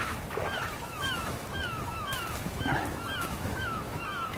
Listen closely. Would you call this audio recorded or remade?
remade